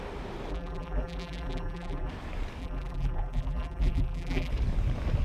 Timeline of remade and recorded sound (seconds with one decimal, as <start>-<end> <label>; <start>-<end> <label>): 0.0-0.5 recorded; 0.5-2.1 remade; 2.1-2.6 recorded; 2.6-4.5 remade; 4.5-5.2 recorded